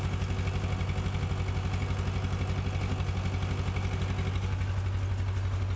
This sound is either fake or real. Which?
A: real